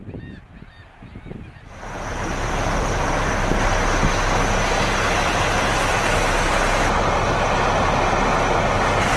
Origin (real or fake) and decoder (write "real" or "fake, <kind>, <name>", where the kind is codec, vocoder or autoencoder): real